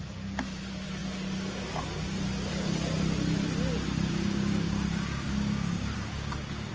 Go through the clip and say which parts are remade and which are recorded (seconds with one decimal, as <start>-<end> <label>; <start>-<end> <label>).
0.0-4.1 recorded; 4.1-6.7 remade